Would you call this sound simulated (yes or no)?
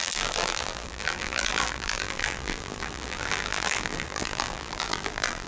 yes